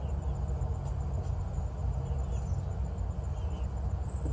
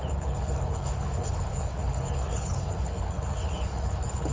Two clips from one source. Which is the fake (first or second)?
second